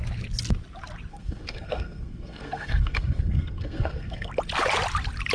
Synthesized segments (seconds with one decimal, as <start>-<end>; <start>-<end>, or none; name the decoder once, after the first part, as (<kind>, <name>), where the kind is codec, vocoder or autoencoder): 1.1-4.3 (codec, SNAC)